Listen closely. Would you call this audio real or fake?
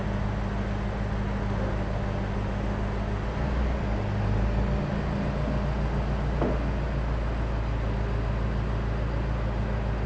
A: real